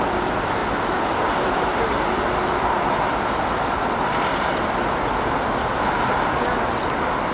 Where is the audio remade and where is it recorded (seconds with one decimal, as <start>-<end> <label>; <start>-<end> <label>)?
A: 0.0-0.6 recorded; 0.6-3.4 remade; 3.4-7.3 recorded